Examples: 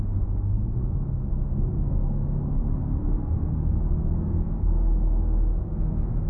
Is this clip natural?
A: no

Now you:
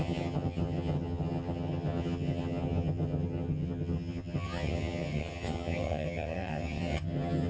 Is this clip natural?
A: no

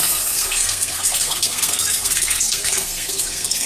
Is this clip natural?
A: no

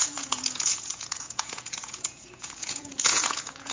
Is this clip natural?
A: no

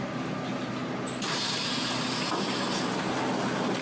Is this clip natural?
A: yes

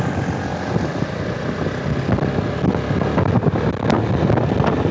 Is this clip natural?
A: yes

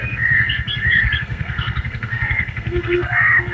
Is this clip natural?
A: no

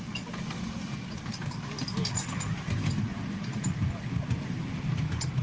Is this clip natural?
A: yes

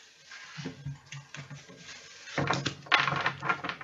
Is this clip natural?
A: yes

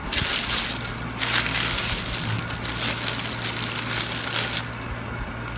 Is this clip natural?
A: yes